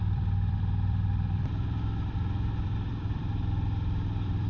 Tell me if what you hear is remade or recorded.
remade